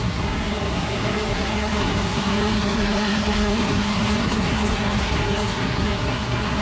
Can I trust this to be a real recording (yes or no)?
no